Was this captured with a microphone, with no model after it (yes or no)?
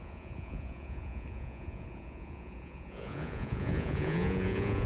no